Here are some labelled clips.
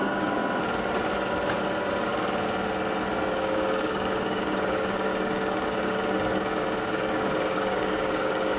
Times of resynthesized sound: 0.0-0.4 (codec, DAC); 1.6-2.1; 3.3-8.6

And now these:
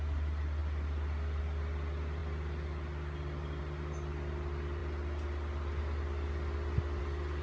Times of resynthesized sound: none

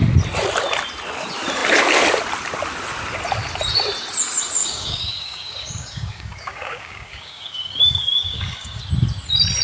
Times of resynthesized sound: 4.6-8.8 (codec, DAC)